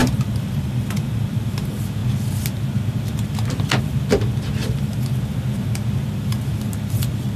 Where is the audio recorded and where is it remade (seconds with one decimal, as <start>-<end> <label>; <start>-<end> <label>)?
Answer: 0.0-1.5 remade; 1.5-7.4 recorded